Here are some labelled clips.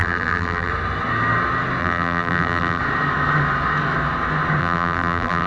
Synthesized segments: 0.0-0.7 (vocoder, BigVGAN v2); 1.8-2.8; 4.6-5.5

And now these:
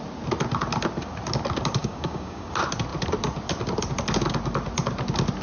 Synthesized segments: 1.8-2.5 (codec, DAC)